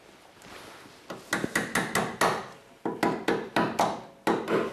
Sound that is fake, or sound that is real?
real